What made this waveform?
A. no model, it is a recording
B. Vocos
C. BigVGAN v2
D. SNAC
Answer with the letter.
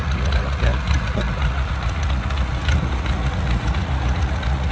B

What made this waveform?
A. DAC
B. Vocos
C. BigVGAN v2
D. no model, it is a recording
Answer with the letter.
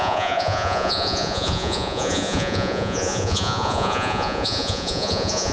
B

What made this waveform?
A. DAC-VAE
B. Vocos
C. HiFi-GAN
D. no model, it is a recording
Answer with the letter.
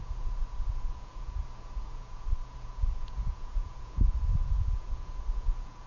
B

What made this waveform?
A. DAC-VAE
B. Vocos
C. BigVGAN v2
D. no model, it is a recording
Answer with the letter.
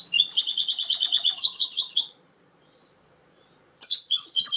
B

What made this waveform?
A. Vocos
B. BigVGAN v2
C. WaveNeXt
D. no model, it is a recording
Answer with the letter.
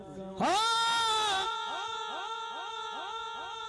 D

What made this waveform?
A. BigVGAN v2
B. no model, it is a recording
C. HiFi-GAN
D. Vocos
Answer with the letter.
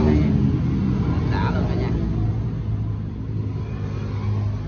B